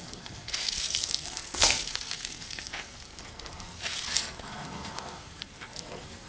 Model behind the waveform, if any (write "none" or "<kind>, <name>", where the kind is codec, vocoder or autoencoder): codec, SNAC